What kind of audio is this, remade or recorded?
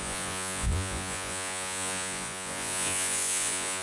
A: remade